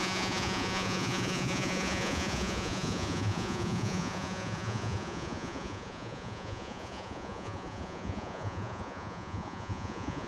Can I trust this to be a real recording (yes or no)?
no